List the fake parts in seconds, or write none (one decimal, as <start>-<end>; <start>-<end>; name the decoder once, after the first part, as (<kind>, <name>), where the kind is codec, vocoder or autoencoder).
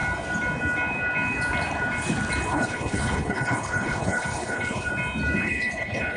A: 2.5-4.9 (codec, HILCodec); 5.4-6.2